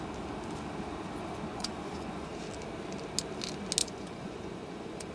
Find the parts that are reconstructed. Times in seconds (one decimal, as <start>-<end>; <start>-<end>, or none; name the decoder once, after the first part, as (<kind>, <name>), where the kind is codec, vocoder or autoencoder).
1.5-2.3 (vocoder, Vocos); 3.8-5.1